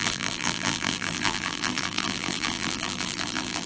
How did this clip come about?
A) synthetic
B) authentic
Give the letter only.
A